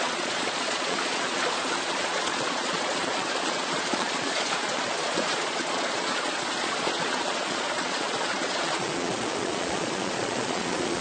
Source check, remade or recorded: remade